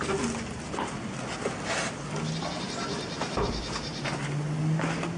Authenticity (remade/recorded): recorded